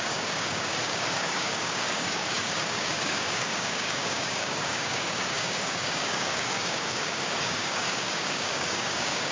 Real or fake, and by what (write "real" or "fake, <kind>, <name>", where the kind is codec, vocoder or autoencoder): fake, codec, DAC